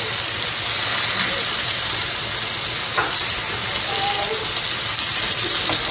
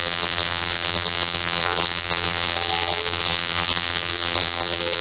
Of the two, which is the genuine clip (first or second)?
first